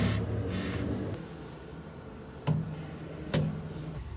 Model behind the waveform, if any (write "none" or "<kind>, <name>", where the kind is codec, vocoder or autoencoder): none